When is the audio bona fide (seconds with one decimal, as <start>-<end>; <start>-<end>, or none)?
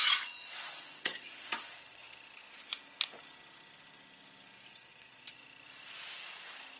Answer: 2.0-4.7; 5.4-6.8